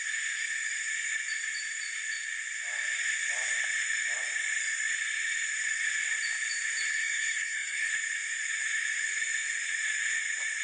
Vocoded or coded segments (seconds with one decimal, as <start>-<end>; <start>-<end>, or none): 6.9-7.9